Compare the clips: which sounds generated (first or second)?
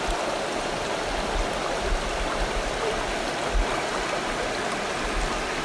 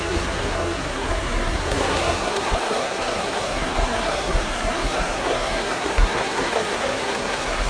second